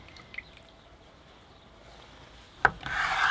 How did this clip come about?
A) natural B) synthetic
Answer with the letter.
A